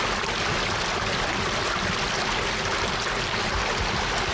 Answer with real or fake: real